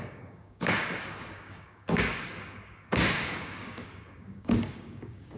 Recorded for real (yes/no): no